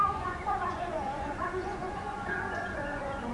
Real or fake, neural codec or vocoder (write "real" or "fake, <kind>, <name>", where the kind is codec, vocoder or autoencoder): fake, vocoder, Vocos